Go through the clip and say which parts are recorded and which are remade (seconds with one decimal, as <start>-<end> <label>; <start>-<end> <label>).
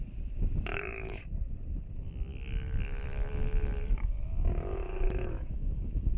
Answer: 0.0-0.7 recorded; 0.7-1.2 remade; 1.2-2.3 recorded; 2.3-6.2 remade